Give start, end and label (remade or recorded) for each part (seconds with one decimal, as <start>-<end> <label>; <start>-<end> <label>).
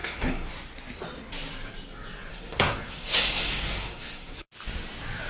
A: 0.0-0.5 remade; 0.5-2.3 recorded; 2.3-4.5 remade; 4.5-5.3 recorded